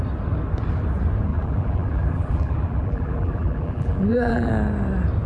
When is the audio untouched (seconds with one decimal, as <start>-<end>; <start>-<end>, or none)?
0.0-1.3; 4.5-5.3